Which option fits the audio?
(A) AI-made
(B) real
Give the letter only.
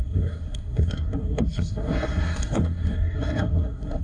A